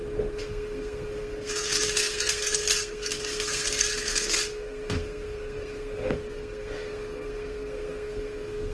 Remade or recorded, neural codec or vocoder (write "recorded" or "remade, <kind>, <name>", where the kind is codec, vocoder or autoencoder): remade, codec, SNAC